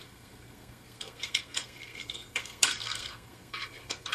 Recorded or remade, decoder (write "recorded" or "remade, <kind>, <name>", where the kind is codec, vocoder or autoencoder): remade, codec, SNAC